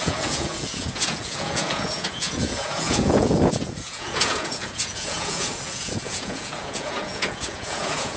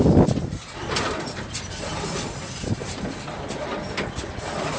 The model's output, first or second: first